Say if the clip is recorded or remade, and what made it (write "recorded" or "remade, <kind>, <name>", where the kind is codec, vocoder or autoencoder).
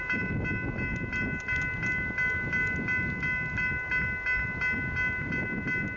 recorded